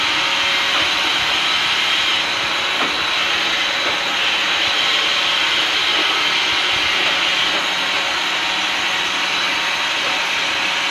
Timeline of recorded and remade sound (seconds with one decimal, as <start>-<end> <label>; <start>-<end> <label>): 0.0-4.4 recorded; 4.4-5.4 remade; 5.4-10.9 recorded